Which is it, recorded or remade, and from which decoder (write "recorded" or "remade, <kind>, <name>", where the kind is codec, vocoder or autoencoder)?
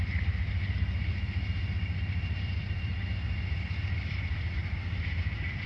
recorded